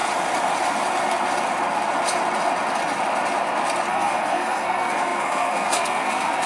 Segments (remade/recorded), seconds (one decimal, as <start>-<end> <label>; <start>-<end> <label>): 0.0-3.9 recorded; 3.9-6.5 remade